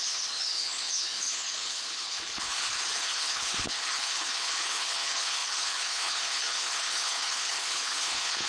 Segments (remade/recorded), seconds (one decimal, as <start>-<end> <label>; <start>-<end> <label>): 0.0-8.5 remade